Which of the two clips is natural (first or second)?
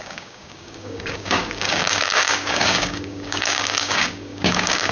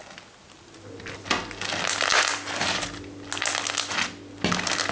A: second